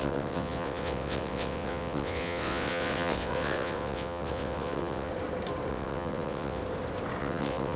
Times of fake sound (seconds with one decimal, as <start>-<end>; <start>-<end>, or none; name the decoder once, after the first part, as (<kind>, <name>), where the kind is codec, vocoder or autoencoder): 0.0-5.1 (vocoder, WaveNeXt); 5.7-6.6; 7.2-7.8